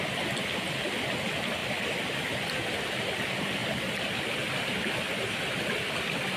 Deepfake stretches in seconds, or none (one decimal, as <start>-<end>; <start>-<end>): none